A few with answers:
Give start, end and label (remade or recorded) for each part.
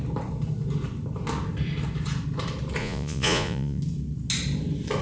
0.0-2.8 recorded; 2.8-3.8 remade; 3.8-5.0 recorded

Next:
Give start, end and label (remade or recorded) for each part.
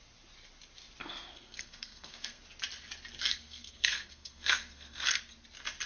0.0-1.0 recorded; 1.0-2.4 remade; 2.4-3.2 recorded; 3.2-5.2 remade; 5.2-5.9 recorded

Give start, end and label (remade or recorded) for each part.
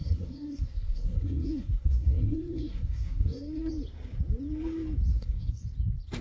0.0-3.7 remade; 3.7-5.1 recorded; 5.1-5.6 remade; 5.6-6.2 recorded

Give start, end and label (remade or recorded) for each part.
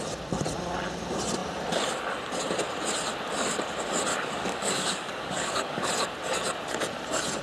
0.0-4.1 recorded; 4.1-5.9 remade; 5.9-7.4 recorded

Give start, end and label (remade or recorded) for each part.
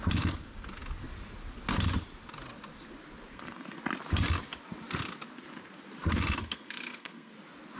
0.0-3.3 recorded; 3.3-3.8 remade; 3.8-6.4 recorded; 6.4-7.3 remade; 7.3-7.8 recorded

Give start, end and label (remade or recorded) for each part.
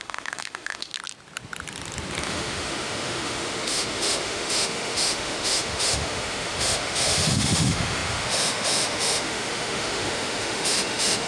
0.0-0.9 remade; 0.9-2.2 recorded; 2.2-11.3 remade